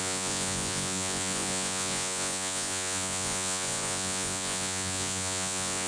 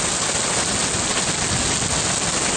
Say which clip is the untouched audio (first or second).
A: second